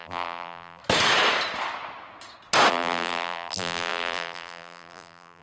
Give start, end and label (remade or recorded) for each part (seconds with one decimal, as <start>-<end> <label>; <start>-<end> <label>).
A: 0.0-0.8 remade; 0.8-2.7 recorded; 2.7-5.4 remade